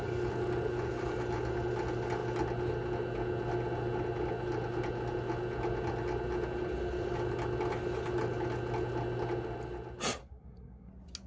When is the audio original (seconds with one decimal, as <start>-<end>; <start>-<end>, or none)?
0.0-10.2; 10.9-11.3